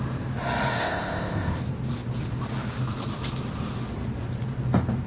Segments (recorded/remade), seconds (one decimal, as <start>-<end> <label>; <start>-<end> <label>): 0.0-0.8 recorded; 0.8-1.6 remade; 1.6-5.1 recorded